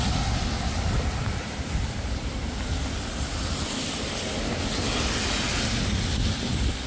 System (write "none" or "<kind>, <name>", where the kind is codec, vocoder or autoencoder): none